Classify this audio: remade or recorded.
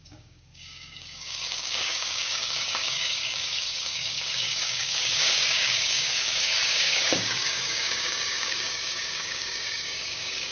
remade